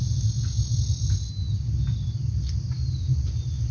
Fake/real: real